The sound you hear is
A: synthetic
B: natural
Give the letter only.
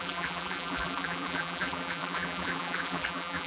A